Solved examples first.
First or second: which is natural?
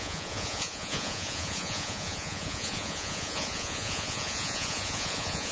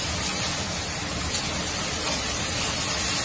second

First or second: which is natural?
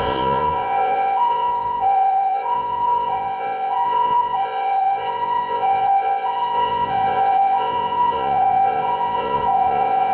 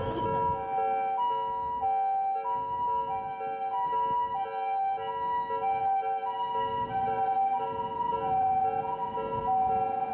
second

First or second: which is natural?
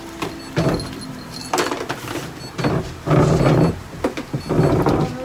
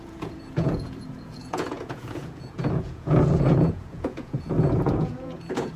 first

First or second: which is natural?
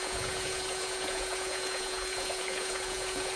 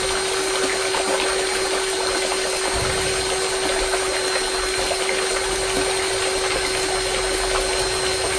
second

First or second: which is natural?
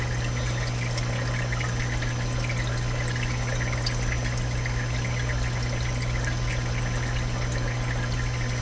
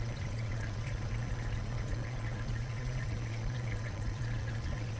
first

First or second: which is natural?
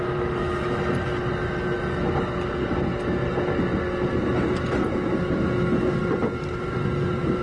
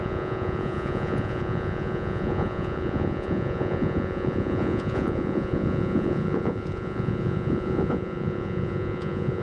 first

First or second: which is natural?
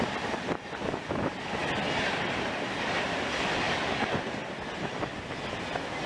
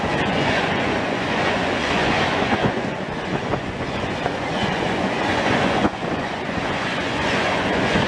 first